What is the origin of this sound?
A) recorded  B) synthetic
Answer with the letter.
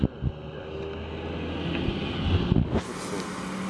A